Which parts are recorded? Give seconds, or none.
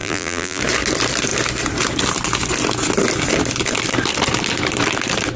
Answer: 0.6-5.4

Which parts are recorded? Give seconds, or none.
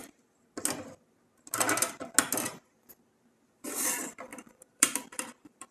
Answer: 0.0-4.3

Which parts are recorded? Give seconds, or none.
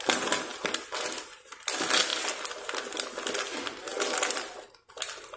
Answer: 0.5-1.6; 2.1-5.4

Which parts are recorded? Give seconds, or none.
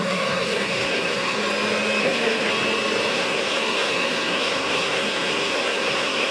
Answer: 1.4-2.0; 2.5-3.1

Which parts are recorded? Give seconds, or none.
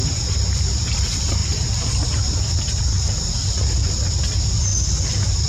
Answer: 0.0-1.4; 4.1-4.7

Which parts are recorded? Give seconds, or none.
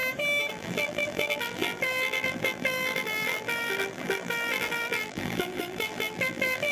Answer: 0.0-0.5